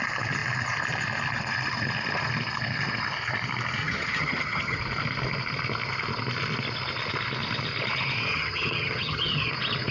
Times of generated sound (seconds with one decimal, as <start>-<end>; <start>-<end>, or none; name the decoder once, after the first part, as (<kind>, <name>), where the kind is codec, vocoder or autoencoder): 3.8-4.8 (vocoder, HiFi-GAN); 8.3-9.5